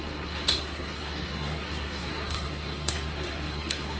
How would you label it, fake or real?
fake